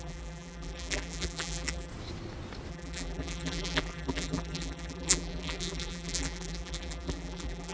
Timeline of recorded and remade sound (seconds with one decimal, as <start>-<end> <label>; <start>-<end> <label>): 0.0-1.9 remade; 1.9-2.7 recorded; 2.7-7.7 remade